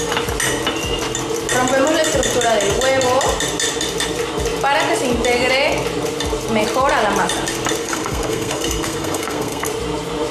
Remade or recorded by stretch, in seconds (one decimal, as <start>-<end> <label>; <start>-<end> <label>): 0.0-7.8 recorded; 7.8-9.7 remade; 9.7-10.3 recorded